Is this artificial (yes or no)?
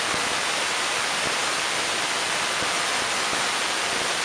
no